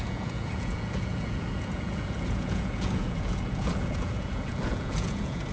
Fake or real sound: fake